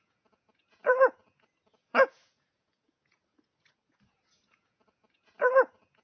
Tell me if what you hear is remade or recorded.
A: remade